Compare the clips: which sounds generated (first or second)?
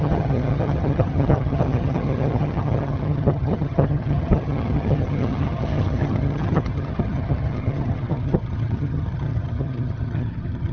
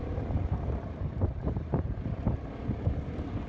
first